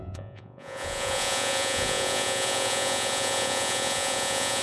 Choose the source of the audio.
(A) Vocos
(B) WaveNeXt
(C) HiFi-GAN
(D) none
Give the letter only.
A